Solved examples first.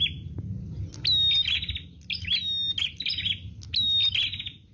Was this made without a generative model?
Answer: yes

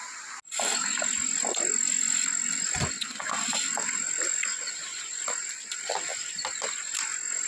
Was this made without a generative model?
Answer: yes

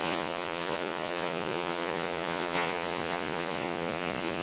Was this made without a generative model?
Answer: no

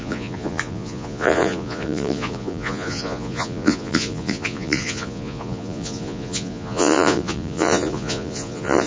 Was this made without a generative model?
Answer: no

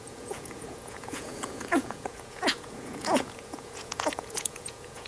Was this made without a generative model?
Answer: no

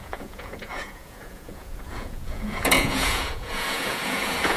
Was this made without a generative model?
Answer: no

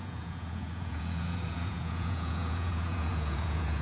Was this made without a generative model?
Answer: no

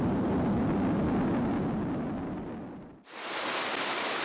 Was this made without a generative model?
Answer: yes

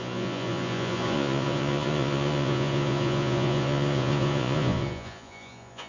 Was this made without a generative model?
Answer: no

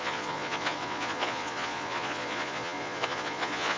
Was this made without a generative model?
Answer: no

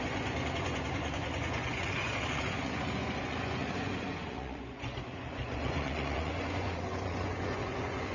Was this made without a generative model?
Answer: no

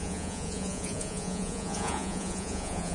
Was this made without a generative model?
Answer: no